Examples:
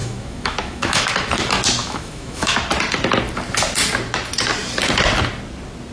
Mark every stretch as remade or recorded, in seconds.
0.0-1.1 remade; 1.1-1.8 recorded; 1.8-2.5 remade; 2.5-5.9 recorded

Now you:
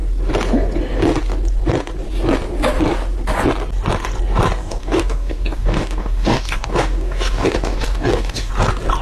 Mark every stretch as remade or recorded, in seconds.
0.0-4.6 recorded; 4.6-8.5 remade; 8.5-9.0 recorded

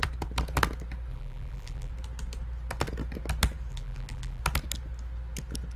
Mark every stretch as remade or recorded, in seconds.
0.0-1.1 recorded; 1.1-1.9 remade; 1.9-3.7 recorded; 3.7-4.4 remade; 4.4-5.8 recorded

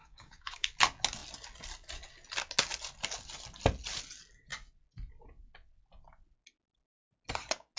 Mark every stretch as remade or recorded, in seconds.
0.0-0.7 remade; 0.7-7.8 recorded

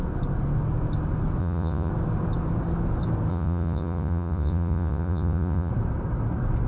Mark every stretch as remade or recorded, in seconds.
0.0-1.4 recorded; 1.4-1.9 remade; 1.9-3.3 recorded; 3.3-5.7 remade; 5.7-6.7 recorded

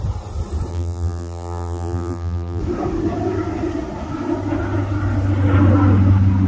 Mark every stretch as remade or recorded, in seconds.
0.0-0.7 recorded; 0.7-2.6 remade; 2.6-6.5 recorded